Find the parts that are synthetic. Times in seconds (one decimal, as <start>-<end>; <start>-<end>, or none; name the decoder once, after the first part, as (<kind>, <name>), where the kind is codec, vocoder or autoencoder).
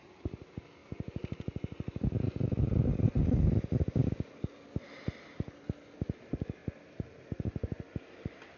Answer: none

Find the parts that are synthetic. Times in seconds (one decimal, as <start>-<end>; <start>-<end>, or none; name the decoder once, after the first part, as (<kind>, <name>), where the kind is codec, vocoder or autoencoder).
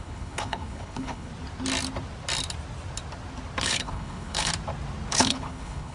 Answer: 0.0-1.3 (codec, HILCodec); 3.6-4.5; 5.1-5.9